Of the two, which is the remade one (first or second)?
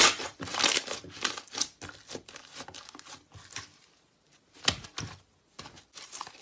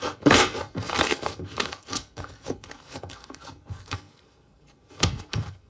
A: second